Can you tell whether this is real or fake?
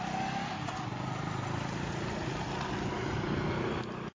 real